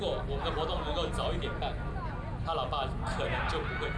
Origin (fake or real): real